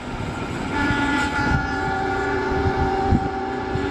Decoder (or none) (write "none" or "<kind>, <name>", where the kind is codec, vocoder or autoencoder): vocoder, Vocos